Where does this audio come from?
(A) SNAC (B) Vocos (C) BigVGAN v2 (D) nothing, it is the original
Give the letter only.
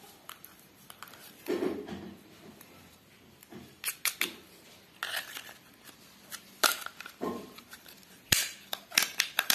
C